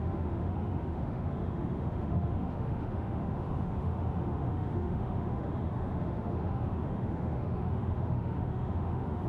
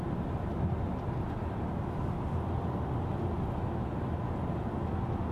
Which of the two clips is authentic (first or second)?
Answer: second